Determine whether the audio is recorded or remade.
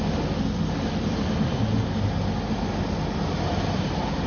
recorded